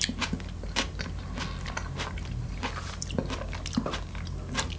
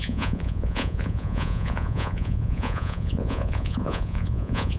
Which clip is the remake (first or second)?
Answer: second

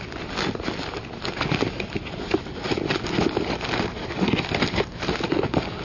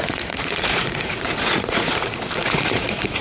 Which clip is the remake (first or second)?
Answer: second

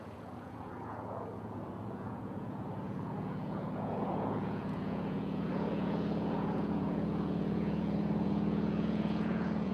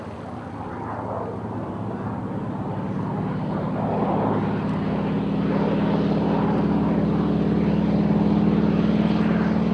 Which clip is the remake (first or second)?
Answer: first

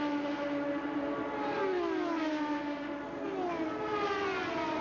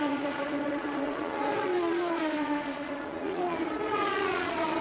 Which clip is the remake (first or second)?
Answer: second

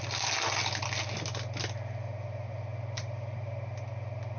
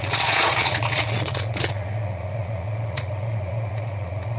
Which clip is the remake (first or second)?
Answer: second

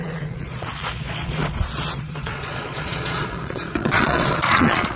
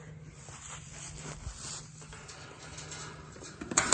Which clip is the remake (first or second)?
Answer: first